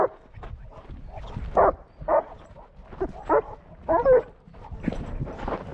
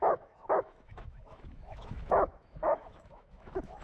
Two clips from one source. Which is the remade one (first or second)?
second